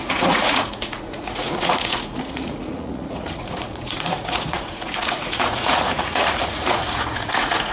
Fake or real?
fake